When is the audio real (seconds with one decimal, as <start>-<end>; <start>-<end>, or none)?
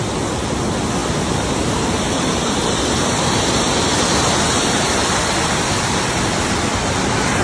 0.0-7.4